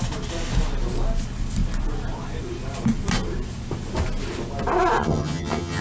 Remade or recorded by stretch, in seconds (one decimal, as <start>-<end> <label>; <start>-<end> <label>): 0.0-5.0 recorded; 5.0-5.8 remade